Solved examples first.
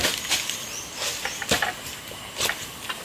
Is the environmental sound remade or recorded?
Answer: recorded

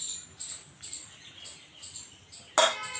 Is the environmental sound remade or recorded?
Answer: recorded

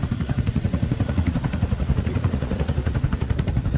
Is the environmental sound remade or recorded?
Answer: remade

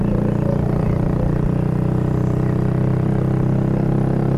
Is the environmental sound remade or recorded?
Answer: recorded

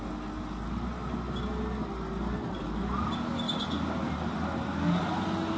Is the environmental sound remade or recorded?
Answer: recorded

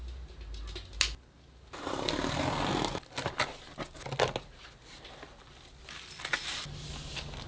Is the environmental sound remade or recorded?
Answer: recorded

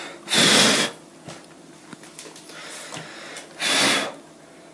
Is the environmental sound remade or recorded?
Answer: recorded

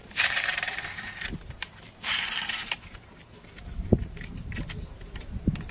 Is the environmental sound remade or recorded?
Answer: remade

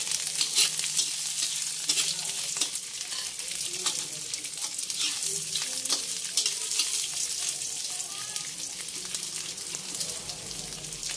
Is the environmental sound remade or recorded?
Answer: recorded